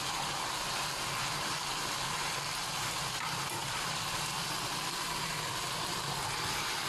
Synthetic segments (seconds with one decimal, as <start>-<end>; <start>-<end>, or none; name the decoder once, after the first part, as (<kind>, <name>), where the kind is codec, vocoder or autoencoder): 3.6-4.2 (vocoder, BigVGAN v2)